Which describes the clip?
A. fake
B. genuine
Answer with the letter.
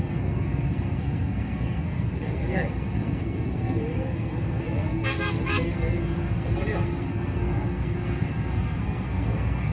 A